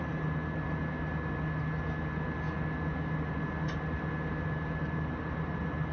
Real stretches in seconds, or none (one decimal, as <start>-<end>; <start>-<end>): 0.0-5.9